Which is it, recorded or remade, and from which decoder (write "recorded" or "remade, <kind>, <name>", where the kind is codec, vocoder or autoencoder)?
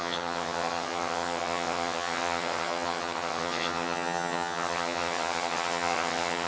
remade, vocoder, HiFi-GAN